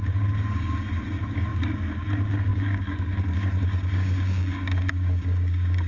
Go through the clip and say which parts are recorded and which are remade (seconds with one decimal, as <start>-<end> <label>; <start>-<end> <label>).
0.0-5.9 remade